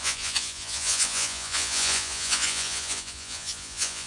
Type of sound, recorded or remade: remade